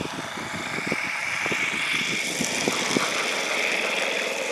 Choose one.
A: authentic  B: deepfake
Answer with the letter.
A